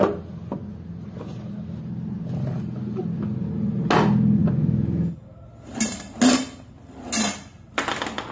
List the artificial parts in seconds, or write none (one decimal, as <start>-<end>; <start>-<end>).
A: none